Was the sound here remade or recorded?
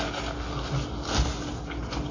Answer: recorded